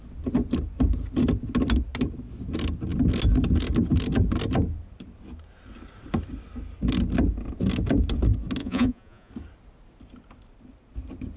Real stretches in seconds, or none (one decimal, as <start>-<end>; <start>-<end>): 0.0-8.6; 9.3-11.4